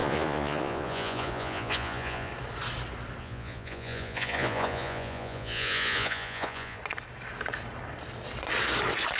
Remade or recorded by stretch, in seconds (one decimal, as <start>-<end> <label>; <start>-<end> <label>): 0.0-2.3 remade; 2.3-3.2 recorded; 3.2-6.8 remade; 6.8-9.2 recorded